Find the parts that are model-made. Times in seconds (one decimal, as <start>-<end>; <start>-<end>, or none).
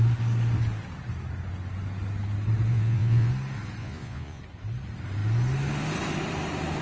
2.7-3.3; 3.8-4.4